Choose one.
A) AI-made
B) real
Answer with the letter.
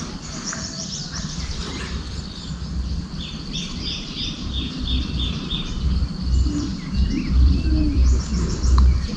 A